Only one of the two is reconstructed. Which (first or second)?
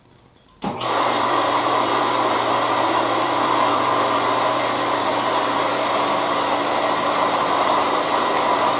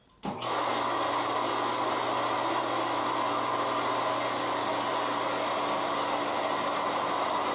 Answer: first